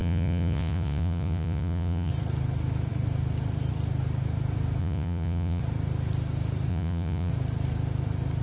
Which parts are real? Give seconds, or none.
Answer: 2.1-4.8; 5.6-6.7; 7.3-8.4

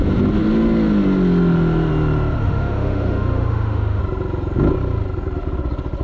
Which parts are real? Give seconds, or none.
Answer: 0.0-2.4; 4.0-6.0

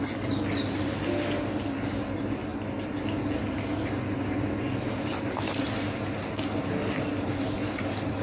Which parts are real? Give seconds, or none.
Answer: 0.0-8.2

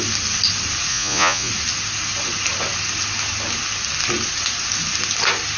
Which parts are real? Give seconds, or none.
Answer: 0.0-0.9; 1.5-5.6

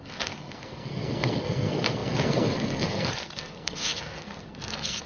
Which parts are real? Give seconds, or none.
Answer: none